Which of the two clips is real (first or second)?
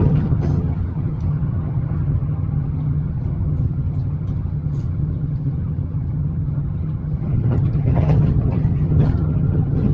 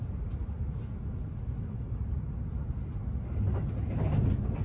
second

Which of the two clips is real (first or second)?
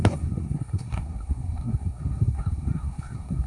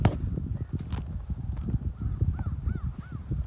second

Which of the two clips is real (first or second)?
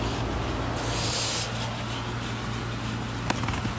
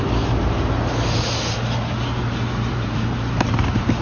first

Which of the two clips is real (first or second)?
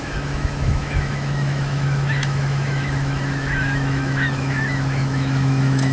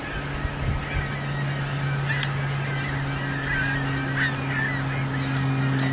second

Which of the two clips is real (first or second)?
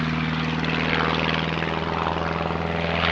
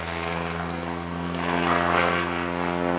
first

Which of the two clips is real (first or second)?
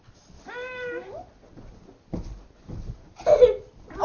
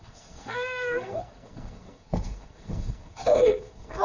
first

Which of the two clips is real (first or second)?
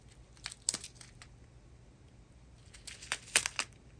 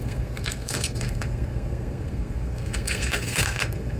first